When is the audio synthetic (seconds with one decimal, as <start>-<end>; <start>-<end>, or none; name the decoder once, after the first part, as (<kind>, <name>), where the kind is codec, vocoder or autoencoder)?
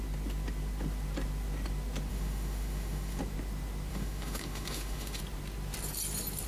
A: 2.1-3.2 (autoencoder, DAC-VAE); 3.9-5.2